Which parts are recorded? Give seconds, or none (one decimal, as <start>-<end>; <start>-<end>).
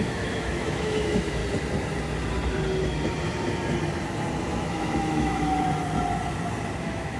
1.4-4.6; 5.5-6.8